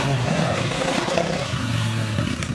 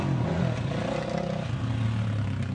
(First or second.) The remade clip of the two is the first